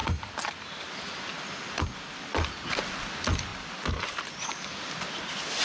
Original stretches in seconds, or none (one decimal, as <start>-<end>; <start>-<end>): 0.0-5.6